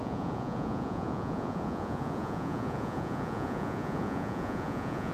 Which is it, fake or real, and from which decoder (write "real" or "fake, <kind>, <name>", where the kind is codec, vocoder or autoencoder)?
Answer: fake, vocoder, Vocos